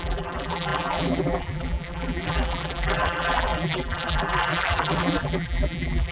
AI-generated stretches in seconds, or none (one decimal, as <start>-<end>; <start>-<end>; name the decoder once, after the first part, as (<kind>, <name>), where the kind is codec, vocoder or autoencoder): 0.0-6.1 (vocoder, BigVGAN v2)